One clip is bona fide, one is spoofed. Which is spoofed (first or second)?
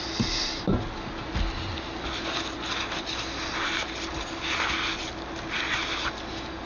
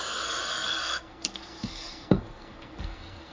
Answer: second